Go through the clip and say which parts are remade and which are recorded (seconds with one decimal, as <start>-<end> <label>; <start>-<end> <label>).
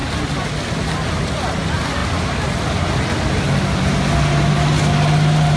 0.0-5.6 recorded